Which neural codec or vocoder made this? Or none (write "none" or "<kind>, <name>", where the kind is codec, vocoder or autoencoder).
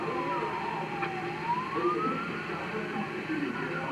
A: vocoder, BigVGAN v2